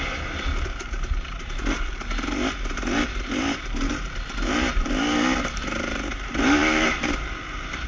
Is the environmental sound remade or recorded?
remade